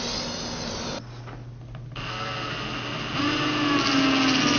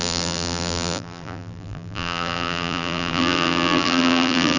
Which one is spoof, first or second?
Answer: second